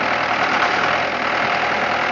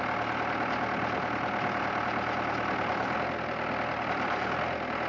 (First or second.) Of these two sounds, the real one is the second